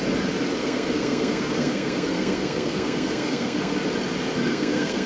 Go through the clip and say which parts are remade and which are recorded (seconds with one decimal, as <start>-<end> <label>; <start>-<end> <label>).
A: 0.0-0.6 recorded; 0.6-3.7 remade; 3.7-4.5 recorded; 4.5-5.1 remade